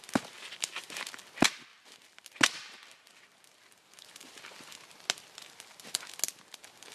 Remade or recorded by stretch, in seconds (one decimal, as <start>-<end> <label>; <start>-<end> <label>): 0.0-6.9 recorded

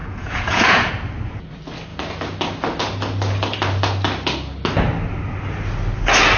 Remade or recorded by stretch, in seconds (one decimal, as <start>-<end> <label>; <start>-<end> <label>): 0.0-0.9 remade; 0.9-6.4 recorded